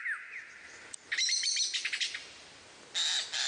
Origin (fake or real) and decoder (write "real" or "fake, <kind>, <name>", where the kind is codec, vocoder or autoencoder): real